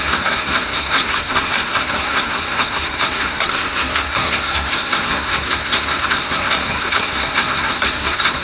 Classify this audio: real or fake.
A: fake